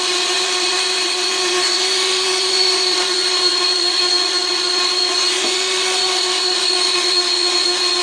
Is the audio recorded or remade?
remade